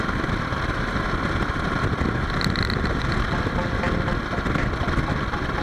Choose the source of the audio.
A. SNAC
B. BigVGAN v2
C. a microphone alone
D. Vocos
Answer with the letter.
C